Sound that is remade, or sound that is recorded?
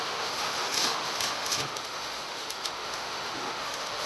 remade